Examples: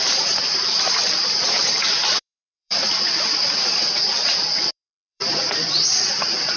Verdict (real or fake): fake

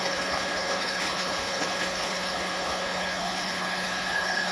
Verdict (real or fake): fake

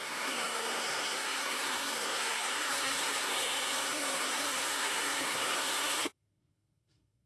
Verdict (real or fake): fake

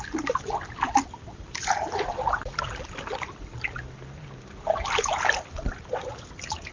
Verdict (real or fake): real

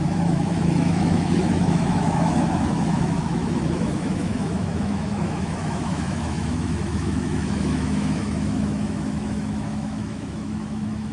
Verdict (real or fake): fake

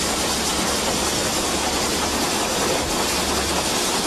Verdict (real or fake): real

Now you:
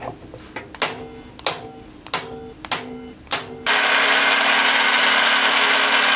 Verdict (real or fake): real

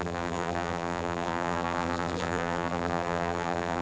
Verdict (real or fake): fake